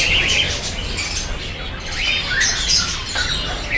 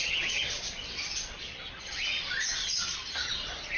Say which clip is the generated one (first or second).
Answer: second